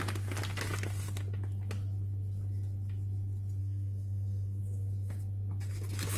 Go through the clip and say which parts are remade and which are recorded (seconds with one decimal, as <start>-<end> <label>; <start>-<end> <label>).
0.0-3.6 recorded; 3.6-4.6 remade; 4.6-6.2 recorded